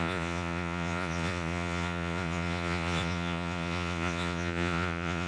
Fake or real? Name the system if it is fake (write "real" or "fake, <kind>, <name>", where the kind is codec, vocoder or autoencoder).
fake, vocoder, Vocos